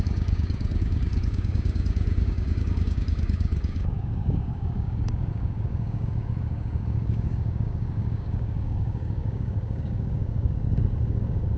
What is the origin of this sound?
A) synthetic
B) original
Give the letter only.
A